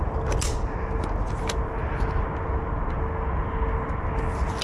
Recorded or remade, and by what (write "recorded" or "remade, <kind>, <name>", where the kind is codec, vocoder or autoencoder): recorded